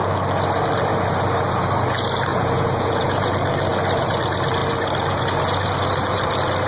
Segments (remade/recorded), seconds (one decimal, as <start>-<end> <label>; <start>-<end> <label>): 0.0-2.3 recorded; 2.3-3.3 remade; 3.3-6.7 recorded